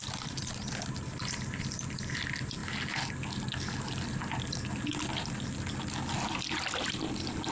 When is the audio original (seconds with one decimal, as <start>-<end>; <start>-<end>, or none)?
0.6-7.5